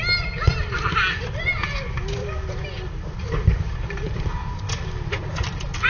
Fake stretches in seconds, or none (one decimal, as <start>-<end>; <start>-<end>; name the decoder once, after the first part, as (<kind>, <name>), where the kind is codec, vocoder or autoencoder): 2.2-4.7 (vocoder, BigVGAN v2)